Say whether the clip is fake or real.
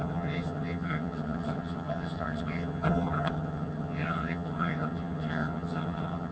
fake